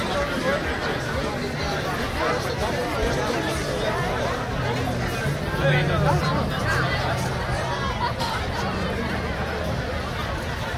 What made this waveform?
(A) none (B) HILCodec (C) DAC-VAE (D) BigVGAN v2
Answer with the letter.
A